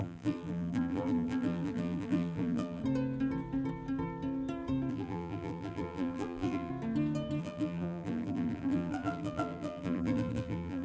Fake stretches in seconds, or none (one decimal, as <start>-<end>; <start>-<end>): 0.0-2.8; 4.9-6.7; 7.4-10.8